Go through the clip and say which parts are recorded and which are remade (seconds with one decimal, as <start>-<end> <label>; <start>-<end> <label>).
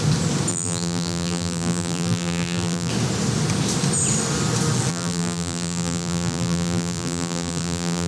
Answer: 0.0-0.5 recorded; 0.5-2.9 remade; 2.9-4.9 recorded; 4.9-8.1 remade